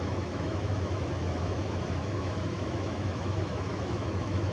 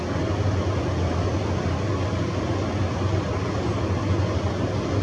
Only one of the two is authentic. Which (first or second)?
second